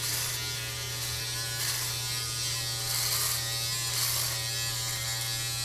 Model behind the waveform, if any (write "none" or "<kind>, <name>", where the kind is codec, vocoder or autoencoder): none